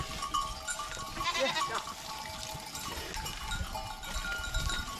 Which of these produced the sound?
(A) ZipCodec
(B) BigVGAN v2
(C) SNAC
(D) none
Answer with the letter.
D